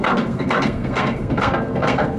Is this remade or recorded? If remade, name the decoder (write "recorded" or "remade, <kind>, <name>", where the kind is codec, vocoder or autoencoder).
remade, codec, SNAC